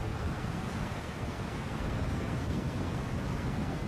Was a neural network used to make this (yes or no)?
yes